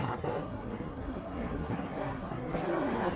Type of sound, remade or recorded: remade